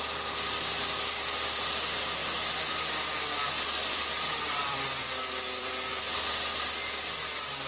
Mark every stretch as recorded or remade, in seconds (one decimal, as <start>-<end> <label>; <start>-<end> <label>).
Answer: 0.0-5.9 remade; 5.9-7.7 recorded